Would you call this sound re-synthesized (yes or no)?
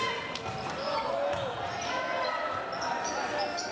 no